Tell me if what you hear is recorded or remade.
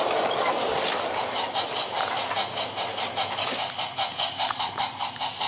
recorded